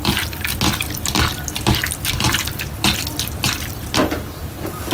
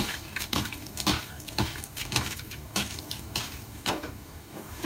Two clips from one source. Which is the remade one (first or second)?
second